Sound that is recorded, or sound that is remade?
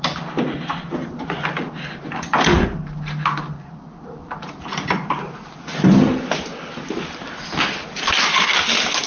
recorded